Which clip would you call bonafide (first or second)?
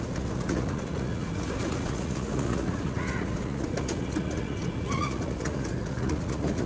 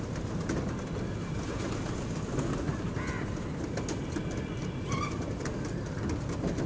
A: second